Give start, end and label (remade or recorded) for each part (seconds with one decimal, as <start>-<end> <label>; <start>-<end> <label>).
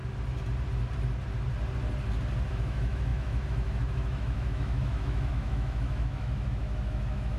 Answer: 0.0-2.5 recorded; 2.5-7.4 remade